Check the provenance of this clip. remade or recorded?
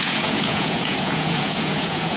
remade